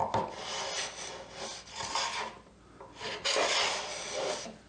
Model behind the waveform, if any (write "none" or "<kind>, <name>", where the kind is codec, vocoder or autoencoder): none